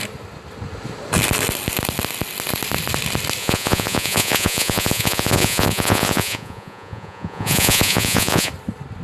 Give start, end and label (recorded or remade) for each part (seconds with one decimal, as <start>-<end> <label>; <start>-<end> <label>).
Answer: 0.0-3.4 recorded; 3.4-8.5 remade; 8.5-9.0 recorded